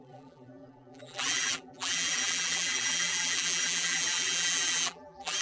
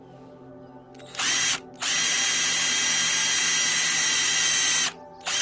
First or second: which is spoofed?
first